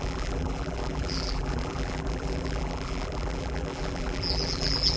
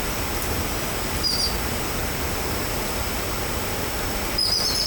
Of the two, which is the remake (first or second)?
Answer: first